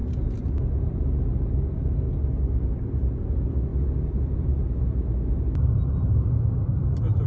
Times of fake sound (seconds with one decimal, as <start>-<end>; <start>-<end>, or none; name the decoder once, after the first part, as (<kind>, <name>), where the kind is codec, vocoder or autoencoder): none

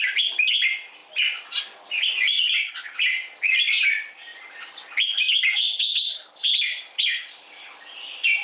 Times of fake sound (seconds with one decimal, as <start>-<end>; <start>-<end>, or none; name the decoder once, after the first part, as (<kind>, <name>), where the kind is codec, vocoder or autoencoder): none

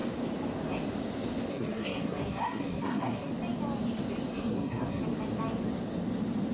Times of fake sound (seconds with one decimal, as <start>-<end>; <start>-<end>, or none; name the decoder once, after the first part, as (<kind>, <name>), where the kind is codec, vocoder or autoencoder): 1.5-3.3 (codec, SNAC); 4.3-5.0

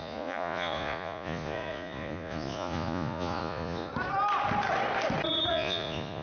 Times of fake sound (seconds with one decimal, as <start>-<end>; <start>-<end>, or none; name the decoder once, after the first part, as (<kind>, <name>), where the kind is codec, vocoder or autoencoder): 0.0-3.9 (vocoder, Vocos); 5.5-6.2

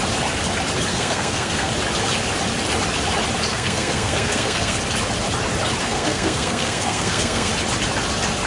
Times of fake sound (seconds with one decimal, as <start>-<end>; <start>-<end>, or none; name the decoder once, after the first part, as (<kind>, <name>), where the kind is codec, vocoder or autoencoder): 0.9-1.7 (codec, SNAC); 3.5-4.8; 5.8-7.5

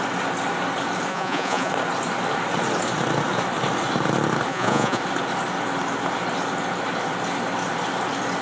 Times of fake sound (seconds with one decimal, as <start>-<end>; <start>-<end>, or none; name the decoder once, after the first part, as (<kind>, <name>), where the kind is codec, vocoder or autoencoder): 1.1-1.7 (vocoder, Vocos); 4.5-5.0

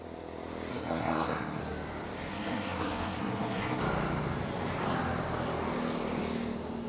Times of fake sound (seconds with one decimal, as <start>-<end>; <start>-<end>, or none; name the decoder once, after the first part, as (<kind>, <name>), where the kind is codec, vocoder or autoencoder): 0.7-1.6 (codec, SNAC); 2.3-3.8